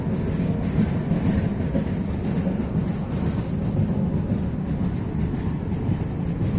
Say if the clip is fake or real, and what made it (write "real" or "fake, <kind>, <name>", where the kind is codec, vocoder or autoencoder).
real